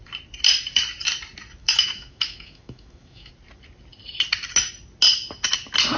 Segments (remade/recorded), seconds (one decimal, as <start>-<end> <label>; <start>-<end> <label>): 0.0-1.6 recorded; 1.6-3.3 remade; 3.3-6.0 recorded